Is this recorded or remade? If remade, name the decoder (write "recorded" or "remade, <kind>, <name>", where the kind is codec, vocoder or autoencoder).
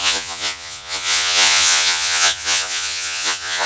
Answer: remade, vocoder, Vocos